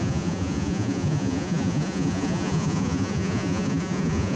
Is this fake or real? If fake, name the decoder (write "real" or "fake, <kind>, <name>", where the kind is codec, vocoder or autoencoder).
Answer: fake, vocoder, Vocos